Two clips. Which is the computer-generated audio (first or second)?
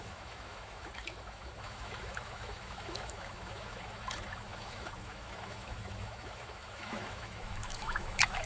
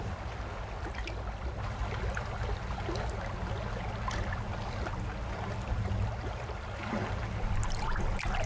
first